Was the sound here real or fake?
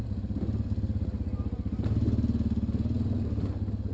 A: real